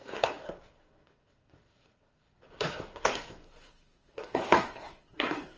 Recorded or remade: remade